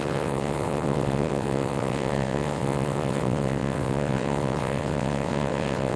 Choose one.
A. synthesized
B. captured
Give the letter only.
A